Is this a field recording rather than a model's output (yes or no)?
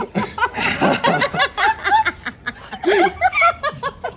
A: yes